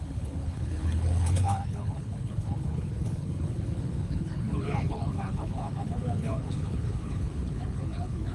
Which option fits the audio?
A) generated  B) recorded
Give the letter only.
A